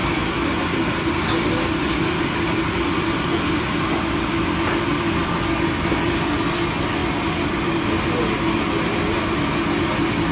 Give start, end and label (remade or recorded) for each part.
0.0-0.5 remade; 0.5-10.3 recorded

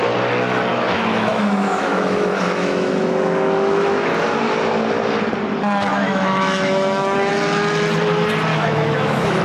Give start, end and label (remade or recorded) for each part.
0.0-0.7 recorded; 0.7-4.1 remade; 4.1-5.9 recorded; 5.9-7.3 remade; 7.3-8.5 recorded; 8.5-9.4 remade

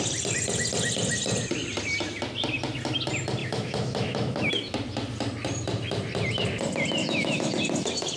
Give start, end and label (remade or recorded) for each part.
0.0-3.4 recorded; 3.4-4.5 remade; 4.5-7.0 recorded; 7.0-7.5 remade; 7.5-8.2 recorded